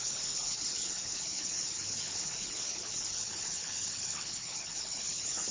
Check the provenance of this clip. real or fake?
fake